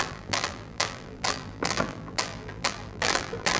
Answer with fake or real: fake